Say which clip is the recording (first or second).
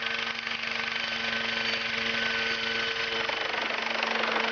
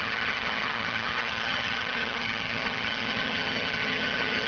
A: first